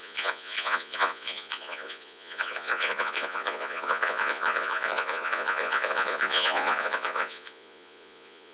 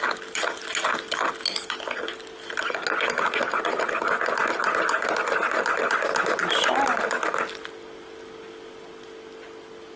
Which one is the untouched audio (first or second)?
second